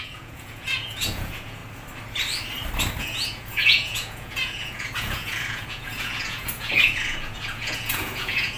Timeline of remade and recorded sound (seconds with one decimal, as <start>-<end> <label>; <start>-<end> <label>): 0.0-1.6 remade; 1.6-3.0 recorded; 3.0-8.6 remade